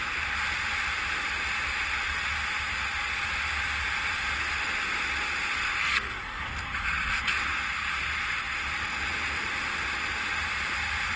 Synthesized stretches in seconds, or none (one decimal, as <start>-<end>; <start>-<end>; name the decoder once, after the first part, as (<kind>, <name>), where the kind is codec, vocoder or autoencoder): 5.8-6.4 (codec, SNAC)